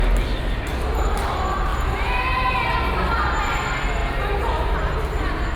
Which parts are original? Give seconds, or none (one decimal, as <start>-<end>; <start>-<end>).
0.0-5.6